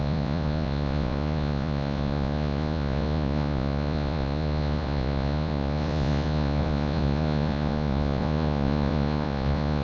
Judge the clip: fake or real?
fake